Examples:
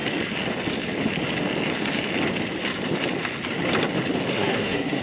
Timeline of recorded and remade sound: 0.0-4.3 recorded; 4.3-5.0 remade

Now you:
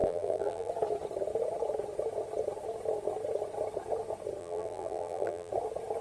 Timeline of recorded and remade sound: 0.0-0.7 remade; 0.7-4.4 recorded; 4.4-5.5 remade; 5.5-6.0 recorded

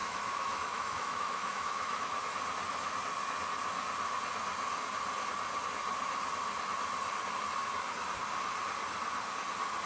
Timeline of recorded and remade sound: 0.0-2.2 remade; 2.2-9.9 recorded

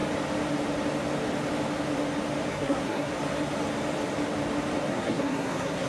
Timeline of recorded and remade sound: 0.0-2.5 recorded; 2.5-3.1 remade; 3.1-4.9 recorded; 4.9-5.9 remade

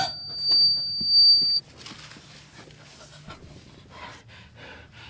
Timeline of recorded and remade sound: 0.0-5.1 recorded

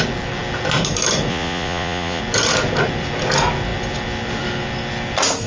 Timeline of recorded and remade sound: 0.0-1.3 recorded; 1.3-2.2 remade; 2.2-5.5 recorded

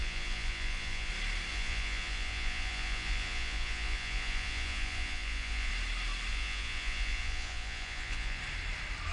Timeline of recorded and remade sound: 0.0-1.1 remade; 1.1-1.5 recorded; 1.5-5.7 remade; 5.7-6.3 recorded; 6.3-8.4 remade; 8.4-9.1 recorded